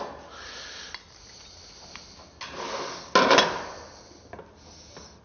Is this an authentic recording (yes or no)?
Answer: yes